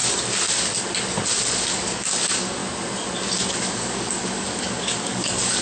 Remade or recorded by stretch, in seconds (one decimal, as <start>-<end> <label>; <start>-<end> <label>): 0.0-1.6 recorded; 1.6-2.6 remade; 2.6-3.5 recorded; 3.5-5.6 remade